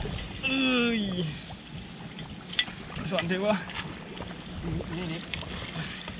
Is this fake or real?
real